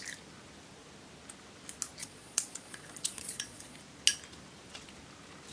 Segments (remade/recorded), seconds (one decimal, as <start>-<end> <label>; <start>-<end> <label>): 0.0-2.0 recorded; 2.0-3.8 remade; 3.8-5.5 recorded